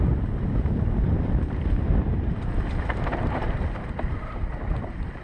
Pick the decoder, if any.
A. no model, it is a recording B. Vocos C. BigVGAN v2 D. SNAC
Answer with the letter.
C